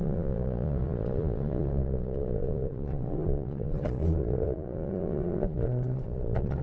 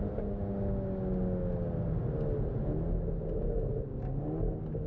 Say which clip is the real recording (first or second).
second